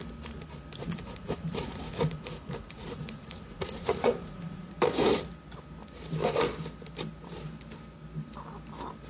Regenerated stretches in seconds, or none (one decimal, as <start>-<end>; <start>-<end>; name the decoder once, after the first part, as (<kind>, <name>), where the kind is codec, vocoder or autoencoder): 0.8-4.7 (vocoder, Vocos)